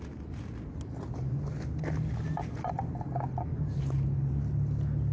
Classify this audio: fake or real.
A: real